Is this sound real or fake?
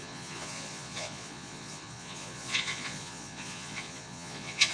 fake